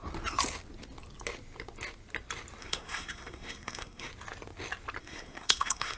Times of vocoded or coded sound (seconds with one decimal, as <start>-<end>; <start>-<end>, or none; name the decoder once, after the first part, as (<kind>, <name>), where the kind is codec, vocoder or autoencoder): 2.6-4.1 (codec, SNAC); 5.0-6.0